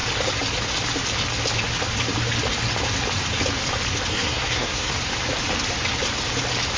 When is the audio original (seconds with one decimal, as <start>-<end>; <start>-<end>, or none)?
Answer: 0.0-4.1; 4.9-6.8